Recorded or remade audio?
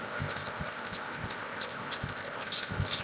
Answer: remade